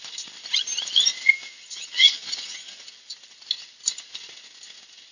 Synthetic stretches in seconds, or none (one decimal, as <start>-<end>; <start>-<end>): 1.4-2.9